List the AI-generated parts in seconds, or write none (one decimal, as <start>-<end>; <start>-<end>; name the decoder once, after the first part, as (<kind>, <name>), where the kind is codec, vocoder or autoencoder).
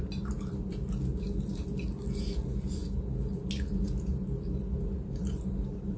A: none